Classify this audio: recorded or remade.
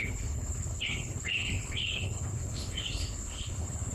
remade